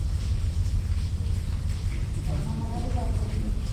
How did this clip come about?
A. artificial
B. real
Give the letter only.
B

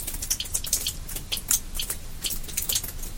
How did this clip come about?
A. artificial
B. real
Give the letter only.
A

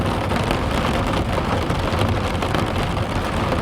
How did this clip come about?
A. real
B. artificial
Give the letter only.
A